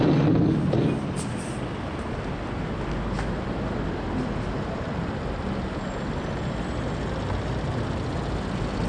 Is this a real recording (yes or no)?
yes